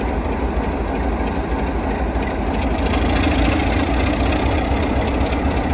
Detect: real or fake real